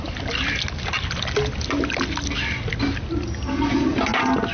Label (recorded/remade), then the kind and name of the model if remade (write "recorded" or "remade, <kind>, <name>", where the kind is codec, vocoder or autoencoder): recorded